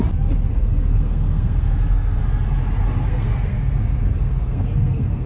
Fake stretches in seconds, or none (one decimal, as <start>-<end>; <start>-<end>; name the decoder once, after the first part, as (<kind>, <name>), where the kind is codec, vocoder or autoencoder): 0.5-2.2 (codec, SNAC); 3.1-5.3